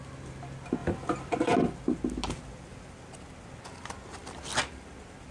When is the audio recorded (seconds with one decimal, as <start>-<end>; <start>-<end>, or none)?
0.0-5.3